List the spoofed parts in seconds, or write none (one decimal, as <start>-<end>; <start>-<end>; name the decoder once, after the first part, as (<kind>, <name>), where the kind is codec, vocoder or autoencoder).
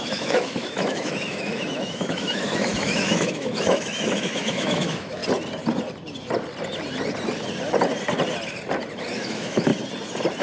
0.0-5.2 (autoencoder, DAC-VAE); 9.1-9.7